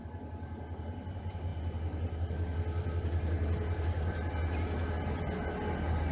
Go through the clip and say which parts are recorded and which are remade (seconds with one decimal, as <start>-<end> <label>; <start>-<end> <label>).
0.0-6.1 recorded